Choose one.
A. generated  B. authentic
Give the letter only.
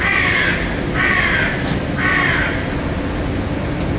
B